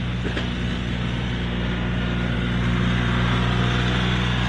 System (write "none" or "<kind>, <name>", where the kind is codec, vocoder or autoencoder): none